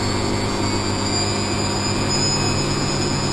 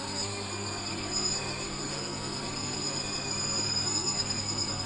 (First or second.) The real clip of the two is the first